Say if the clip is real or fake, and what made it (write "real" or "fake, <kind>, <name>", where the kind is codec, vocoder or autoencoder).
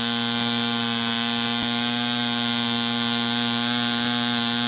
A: real